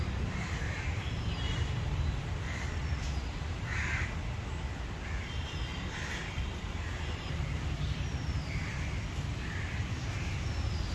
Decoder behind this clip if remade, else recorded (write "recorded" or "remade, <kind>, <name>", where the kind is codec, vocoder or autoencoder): remade, vocoder, BigVGAN v2